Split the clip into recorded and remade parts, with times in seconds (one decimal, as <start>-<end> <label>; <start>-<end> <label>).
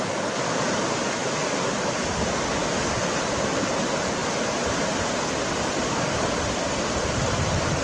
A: 0.0-7.8 recorded